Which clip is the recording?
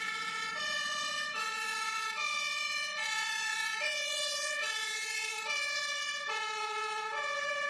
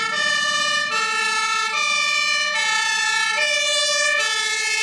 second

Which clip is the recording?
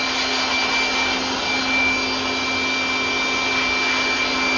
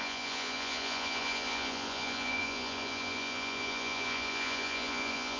first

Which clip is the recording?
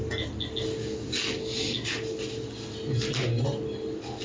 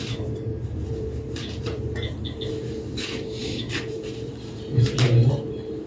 first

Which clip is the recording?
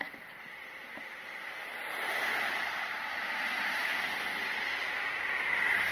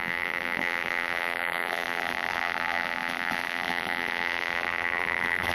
first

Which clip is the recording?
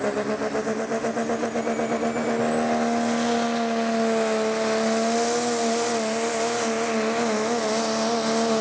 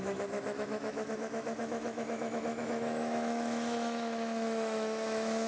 first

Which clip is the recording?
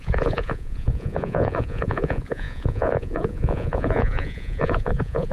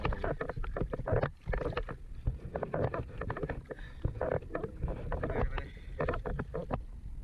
second